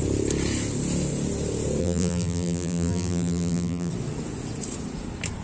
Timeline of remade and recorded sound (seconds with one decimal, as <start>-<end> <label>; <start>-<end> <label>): 0.0-1.8 recorded; 1.8-3.9 remade; 3.9-5.4 recorded